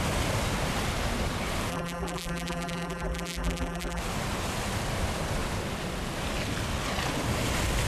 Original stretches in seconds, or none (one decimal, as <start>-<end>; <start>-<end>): 0.0-1.7; 4.0-7.9